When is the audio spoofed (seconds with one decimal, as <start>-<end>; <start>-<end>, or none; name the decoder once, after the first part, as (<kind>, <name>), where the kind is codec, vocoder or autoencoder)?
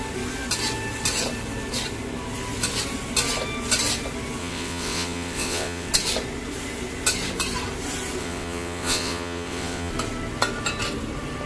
4.4-5.9 (vocoder, WaveNeXt); 8.2-9.9